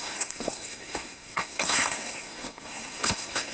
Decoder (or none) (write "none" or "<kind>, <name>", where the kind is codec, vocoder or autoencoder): codec, SNAC